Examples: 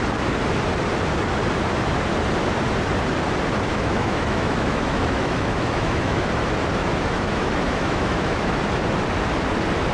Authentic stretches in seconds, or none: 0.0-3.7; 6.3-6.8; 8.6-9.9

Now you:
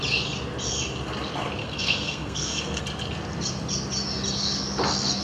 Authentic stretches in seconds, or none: 0.0-1.6; 2.8-5.2

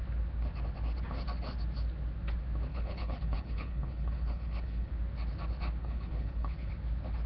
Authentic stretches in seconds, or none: 0.0-2.7; 4.9-5.8; 6.7-7.3